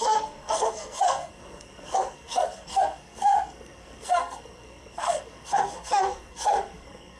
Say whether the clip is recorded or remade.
remade